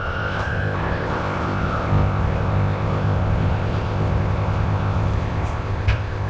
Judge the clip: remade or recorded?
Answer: remade